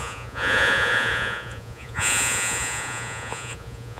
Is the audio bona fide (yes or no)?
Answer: no